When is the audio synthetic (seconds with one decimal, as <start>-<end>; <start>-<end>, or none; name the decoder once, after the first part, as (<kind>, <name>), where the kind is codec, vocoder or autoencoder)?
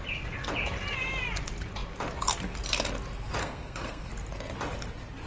3.4-4.1 (codec, SNAC)